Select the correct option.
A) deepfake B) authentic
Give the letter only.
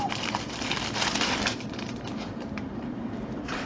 A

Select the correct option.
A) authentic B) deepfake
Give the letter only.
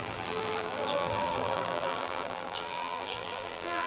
B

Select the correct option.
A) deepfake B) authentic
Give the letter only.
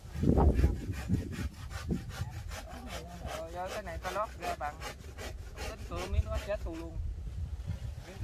B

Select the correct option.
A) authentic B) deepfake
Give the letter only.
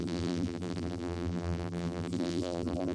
B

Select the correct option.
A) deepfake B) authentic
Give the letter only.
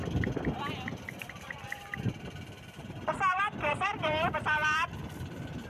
A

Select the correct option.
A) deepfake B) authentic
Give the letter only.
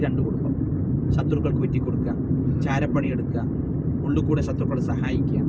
A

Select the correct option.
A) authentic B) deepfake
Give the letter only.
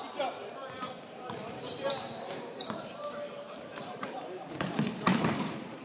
B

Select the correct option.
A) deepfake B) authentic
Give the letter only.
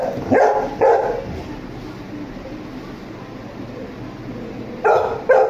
B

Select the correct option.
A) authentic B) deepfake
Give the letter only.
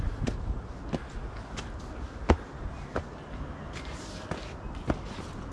A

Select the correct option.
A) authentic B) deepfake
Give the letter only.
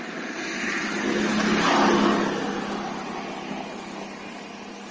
A